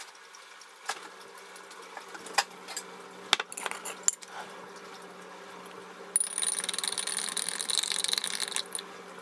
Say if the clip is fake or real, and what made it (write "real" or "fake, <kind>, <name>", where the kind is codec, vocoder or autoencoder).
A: real